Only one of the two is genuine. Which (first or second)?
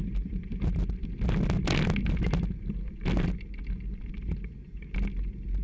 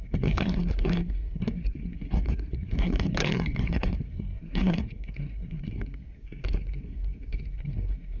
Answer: first